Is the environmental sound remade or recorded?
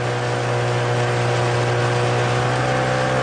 recorded